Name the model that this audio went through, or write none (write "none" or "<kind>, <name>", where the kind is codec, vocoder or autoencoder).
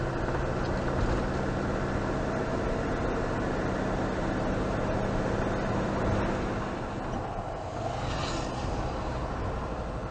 none